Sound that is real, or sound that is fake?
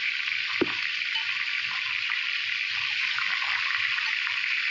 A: real